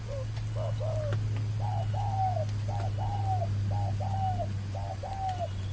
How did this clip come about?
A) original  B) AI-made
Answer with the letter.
A